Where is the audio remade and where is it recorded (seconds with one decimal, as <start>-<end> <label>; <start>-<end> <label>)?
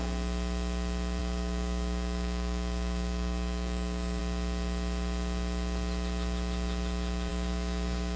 0.0-1.2 recorded; 1.2-4.2 remade; 4.2-7.3 recorded; 7.3-8.2 remade